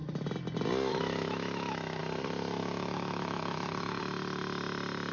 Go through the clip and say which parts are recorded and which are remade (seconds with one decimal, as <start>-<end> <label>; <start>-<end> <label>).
0.0-0.9 recorded; 0.9-2.0 remade; 2.0-2.6 recorded; 2.6-4.0 remade; 4.0-5.1 recorded